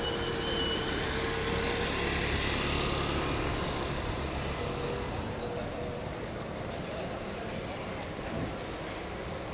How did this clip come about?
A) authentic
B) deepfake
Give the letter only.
A